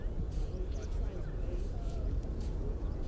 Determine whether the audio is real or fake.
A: fake